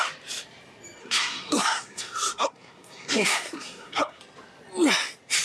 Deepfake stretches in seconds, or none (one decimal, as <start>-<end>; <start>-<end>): 1.0-4.2